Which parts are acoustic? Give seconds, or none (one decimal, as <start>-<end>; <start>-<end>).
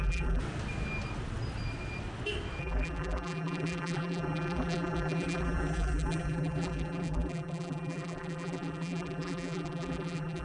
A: 0.4-2.6